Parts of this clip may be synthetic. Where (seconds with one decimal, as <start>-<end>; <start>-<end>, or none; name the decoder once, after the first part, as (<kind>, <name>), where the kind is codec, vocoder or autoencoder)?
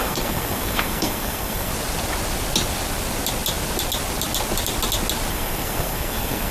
0.0-1.7 (codec, SNAC); 5.3-6.5